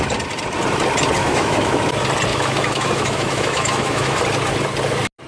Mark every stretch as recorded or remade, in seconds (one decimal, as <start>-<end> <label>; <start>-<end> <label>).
0.0-1.2 recorded; 1.2-1.8 remade; 1.8-2.3 recorded; 2.3-4.2 remade; 4.2-5.3 recorded